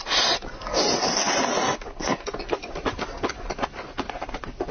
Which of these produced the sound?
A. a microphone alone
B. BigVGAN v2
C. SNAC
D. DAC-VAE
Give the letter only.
A